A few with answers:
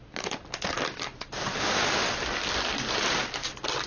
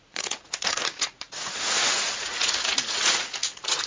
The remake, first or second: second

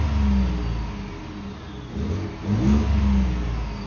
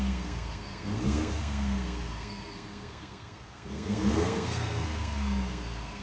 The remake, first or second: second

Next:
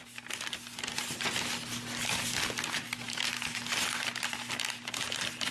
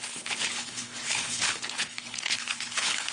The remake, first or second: second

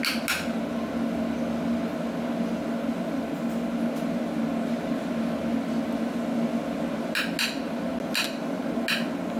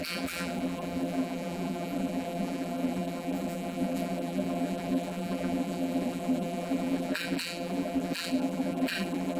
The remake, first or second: second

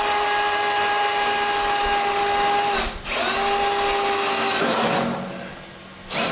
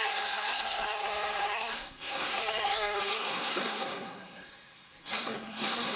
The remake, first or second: second